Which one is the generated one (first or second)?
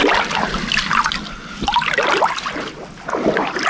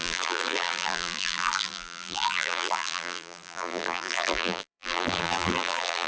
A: second